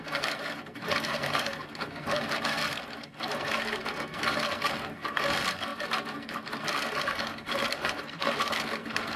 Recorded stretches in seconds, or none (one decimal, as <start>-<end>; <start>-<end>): none